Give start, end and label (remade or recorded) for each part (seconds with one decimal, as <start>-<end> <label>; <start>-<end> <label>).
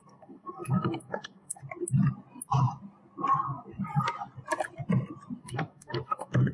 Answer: 0.0-1.6 remade; 1.6-5.4 recorded; 5.4-6.5 remade